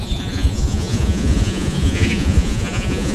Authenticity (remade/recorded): remade